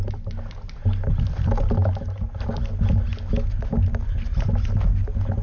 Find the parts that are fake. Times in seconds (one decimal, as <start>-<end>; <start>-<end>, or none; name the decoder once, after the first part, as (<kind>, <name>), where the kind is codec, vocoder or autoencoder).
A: none